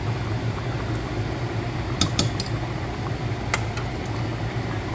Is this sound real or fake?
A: real